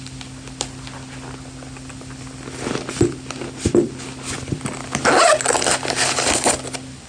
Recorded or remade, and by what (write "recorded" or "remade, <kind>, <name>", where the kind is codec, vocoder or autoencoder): recorded